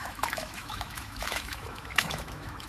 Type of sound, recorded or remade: remade